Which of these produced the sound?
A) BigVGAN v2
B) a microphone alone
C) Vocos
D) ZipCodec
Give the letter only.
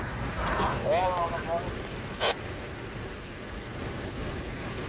B